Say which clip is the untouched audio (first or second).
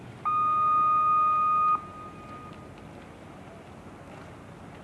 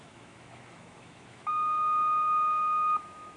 first